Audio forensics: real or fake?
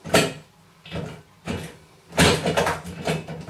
real